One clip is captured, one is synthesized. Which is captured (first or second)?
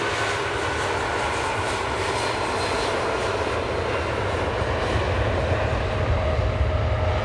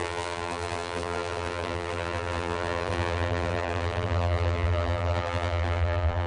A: first